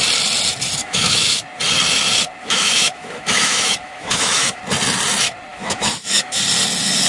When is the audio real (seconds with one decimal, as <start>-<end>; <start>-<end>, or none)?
0.0-0.8; 1.4-2.4; 4.6-5.5; 6.4-7.1